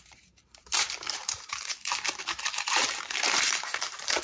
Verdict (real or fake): fake